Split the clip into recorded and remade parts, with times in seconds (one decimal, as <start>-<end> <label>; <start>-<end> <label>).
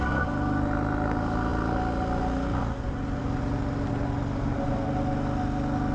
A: 0.0-5.9 recorded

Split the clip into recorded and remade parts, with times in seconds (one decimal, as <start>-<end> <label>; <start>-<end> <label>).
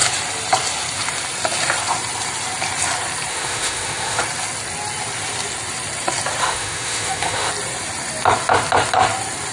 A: 0.0-3.3 recorded; 3.3-4.2 remade; 4.2-6.4 recorded; 6.4-7.5 remade; 7.5-9.5 recorded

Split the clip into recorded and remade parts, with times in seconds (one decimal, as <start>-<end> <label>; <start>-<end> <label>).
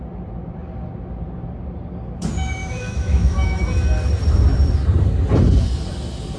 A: 0.0-2.6 recorded; 2.6-3.6 remade; 3.6-6.4 recorded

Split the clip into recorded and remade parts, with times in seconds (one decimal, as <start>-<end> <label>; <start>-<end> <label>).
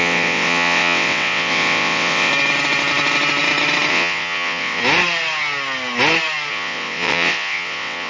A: 0.0-2.3 remade; 2.3-3.9 recorded; 3.9-4.8 remade; 4.8-6.5 recorded; 6.5-8.1 remade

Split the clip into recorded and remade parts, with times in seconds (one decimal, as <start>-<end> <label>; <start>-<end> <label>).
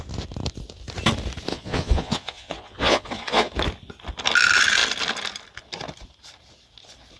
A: 0.0-1.5 recorded; 1.5-3.5 remade; 3.5-7.2 recorded